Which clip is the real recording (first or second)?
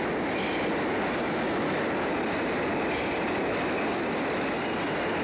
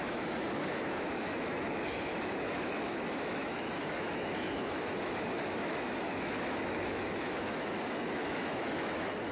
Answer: first